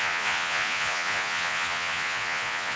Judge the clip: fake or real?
fake